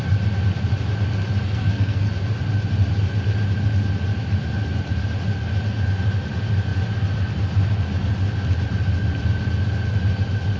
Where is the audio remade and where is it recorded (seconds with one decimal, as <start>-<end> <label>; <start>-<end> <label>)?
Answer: 0.0-1.4 recorded; 1.4-2.1 remade; 2.1-10.6 recorded

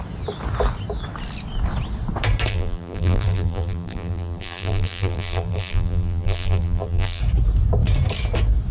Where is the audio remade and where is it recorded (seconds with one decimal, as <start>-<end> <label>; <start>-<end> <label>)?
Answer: 0.0-2.5 recorded; 2.5-7.2 remade; 7.2-8.7 recorded

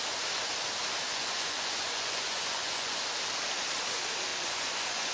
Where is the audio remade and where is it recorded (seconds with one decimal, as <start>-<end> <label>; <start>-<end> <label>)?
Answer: 0.0-1.1 recorded; 1.1-3.0 remade; 3.0-4.3 recorded; 4.3-5.1 remade

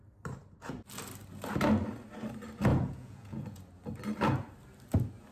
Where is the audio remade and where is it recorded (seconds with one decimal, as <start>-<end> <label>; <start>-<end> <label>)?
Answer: 0.0-2.7 recorded; 2.7-3.6 remade; 3.6-5.3 recorded